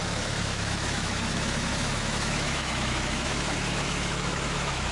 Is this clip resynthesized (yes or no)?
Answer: yes